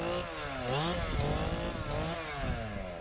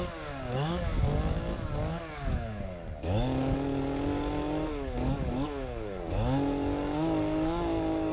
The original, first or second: first